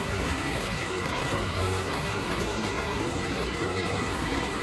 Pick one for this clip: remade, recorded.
remade